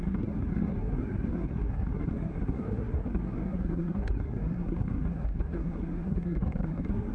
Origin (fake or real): fake